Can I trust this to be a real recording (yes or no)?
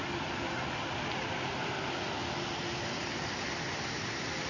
yes